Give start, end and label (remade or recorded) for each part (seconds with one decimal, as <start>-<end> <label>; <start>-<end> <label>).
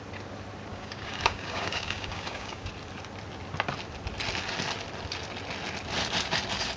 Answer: 0.0-0.7 recorded; 0.7-2.7 remade; 2.7-6.8 recorded